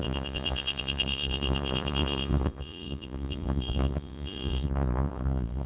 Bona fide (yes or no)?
no